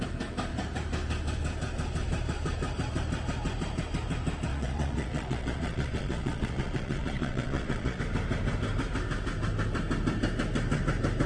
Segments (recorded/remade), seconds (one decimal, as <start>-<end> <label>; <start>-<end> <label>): 0.0-4.5 recorded; 4.5-8.0 remade; 8.0-11.3 recorded